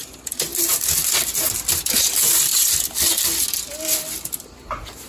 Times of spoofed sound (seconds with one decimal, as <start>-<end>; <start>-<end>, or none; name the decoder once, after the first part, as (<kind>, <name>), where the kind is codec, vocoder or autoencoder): none